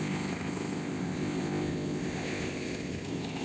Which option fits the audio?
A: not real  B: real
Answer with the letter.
A